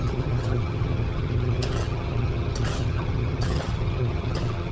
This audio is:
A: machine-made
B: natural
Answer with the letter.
A